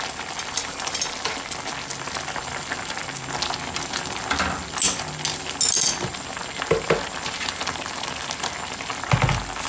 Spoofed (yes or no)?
no